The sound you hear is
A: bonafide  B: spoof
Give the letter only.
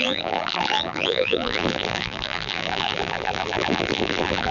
B